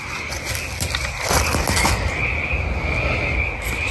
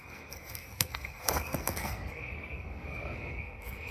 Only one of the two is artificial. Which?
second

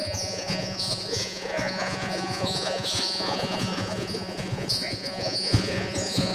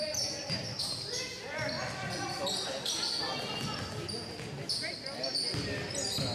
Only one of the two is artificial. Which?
first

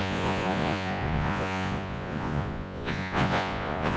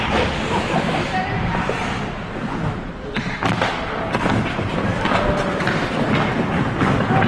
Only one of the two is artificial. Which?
first